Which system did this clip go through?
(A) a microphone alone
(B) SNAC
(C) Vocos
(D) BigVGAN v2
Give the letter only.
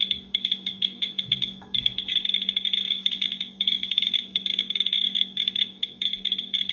B